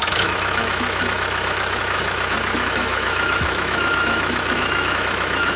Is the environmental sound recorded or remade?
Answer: remade